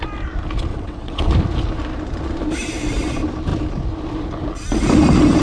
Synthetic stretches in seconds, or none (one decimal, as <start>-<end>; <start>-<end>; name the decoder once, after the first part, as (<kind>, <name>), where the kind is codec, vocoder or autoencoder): 0.7-1.3 (vocoder, WaveNeXt)